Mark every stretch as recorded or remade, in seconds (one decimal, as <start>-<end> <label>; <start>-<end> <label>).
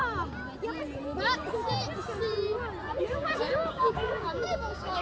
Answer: 0.0-3.0 recorded; 3.0-5.0 remade